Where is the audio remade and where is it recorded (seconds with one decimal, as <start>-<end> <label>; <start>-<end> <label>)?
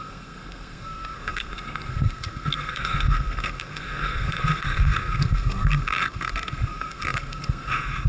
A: 0.0-8.1 remade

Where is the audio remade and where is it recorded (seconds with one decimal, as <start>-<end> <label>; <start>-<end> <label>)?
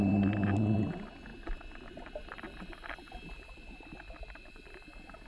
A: 0.0-1.3 recorded; 1.3-4.5 remade; 4.5-5.3 recorded